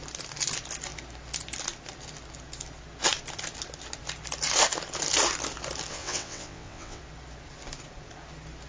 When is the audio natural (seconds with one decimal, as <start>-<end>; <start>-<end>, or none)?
0.0-5.9; 7.0-8.7